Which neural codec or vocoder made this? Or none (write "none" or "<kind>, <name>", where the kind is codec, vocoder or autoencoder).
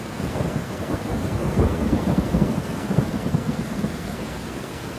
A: codec, SNAC